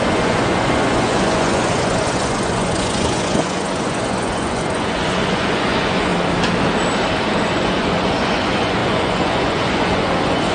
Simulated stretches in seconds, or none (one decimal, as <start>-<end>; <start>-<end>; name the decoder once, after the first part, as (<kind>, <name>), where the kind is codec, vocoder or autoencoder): 0.0-6.1 (vocoder, Vocos); 7.4-10.5